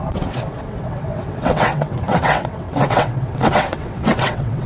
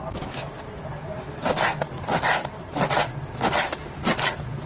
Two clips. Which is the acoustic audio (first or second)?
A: second